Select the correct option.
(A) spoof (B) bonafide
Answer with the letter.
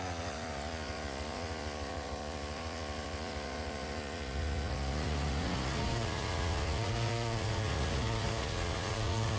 A